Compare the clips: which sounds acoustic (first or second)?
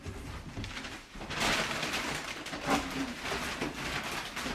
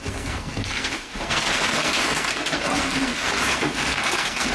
first